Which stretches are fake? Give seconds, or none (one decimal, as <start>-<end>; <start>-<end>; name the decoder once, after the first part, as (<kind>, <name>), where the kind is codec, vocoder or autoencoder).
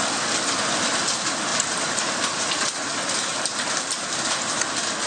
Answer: 1.5-2.4 (vocoder, BigVGAN v2); 3.3-4.5